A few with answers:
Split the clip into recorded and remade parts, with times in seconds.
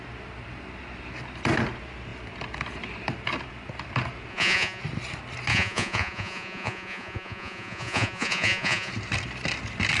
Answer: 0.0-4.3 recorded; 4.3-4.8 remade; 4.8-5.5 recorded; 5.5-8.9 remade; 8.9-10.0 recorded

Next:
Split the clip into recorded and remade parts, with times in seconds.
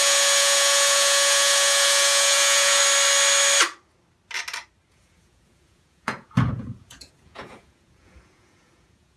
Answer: 0.0-2.8 remade; 2.8-4.9 recorded; 4.9-9.2 remade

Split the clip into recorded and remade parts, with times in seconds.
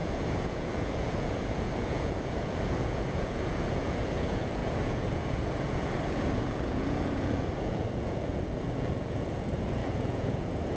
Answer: 0.0-10.8 remade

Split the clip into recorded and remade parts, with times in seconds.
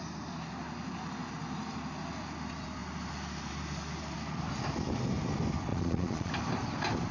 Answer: 0.0-5.7 recorded; 5.7-6.3 remade; 6.3-7.1 recorded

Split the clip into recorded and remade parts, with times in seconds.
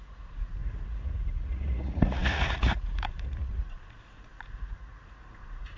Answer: 0.0-5.8 remade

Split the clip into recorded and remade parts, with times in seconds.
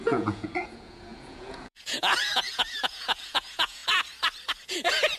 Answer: 0.0-3.8 remade; 3.8-4.7 recorded; 4.7-5.2 remade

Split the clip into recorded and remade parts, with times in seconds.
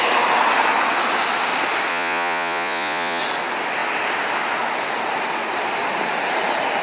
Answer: 0.0-1.9 recorded; 1.9-3.2 remade; 3.2-6.8 recorded